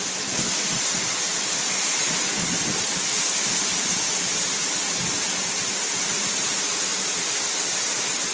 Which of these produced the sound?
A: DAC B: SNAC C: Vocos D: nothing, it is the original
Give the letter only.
D